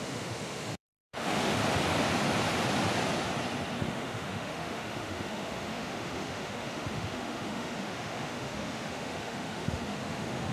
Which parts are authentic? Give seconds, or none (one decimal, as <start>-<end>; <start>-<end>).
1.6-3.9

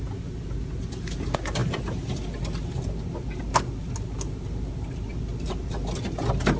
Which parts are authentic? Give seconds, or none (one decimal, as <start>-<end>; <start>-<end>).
0.0-6.6

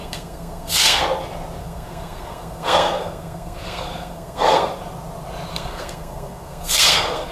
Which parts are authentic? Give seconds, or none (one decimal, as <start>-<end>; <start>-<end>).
1.0-1.6; 4.7-5.5

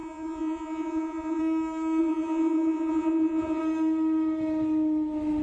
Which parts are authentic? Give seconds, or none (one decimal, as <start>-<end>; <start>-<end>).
1.4-2.0; 3.6-5.4